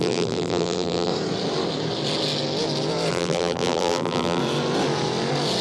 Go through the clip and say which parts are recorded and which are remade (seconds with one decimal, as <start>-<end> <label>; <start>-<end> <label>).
0.0-1.1 remade; 1.1-3.1 recorded; 3.1-4.4 remade; 4.4-5.6 recorded